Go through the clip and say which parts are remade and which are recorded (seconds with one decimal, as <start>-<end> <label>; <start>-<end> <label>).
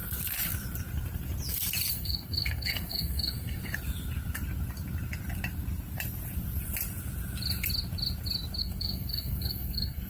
0.0-1.9 recorded; 1.9-3.6 remade; 3.6-8.6 recorded; 8.6-10.1 remade